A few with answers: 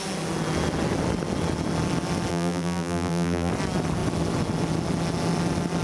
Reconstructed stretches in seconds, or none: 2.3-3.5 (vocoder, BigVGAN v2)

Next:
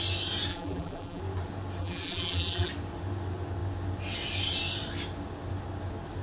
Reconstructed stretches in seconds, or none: 0.5-1.2 (vocoder, BigVGAN v2); 1.8-2.7

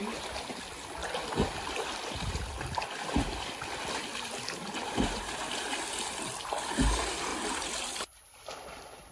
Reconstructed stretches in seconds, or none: 1.0-5.2 (vocoder, BigVGAN v2); 7.3-8.5

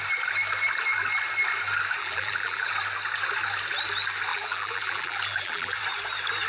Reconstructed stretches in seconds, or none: 2.0-2.7 (vocoder, BigVGAN v2); 4.3-5.8